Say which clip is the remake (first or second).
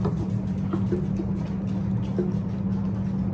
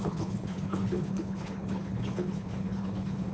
second